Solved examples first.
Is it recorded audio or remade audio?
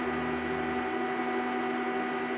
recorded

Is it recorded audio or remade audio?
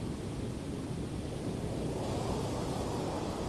recorded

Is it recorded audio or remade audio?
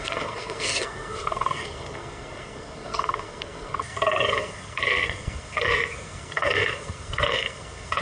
remade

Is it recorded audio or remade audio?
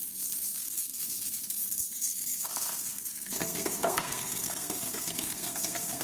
remade